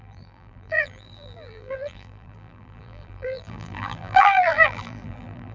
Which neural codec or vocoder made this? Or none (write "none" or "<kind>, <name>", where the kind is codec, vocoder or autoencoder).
vocoder, BigVGAN v2